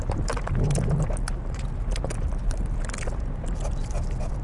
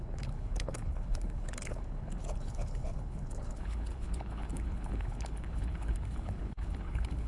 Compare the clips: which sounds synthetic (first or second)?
second